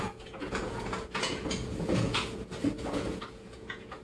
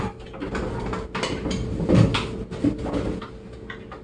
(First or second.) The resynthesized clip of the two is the first